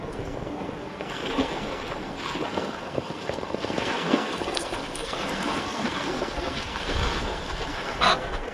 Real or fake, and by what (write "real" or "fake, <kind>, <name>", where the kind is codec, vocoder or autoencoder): fake, codec, SNAC